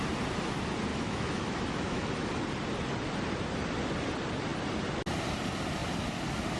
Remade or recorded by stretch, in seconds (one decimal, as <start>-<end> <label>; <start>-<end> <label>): 0.0-0.9 recorded; 0.9-2.3 remade; 2.3-6.6 recorded